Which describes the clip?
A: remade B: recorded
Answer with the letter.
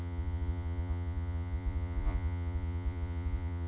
A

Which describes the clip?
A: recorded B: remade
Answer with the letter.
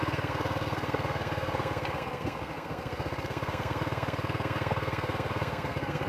B